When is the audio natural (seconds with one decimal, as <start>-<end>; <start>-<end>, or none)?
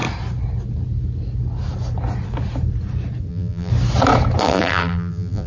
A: 0.0-3.3; 3.7-4.4